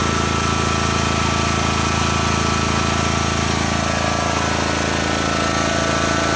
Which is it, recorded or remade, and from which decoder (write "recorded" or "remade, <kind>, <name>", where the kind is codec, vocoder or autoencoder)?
recorded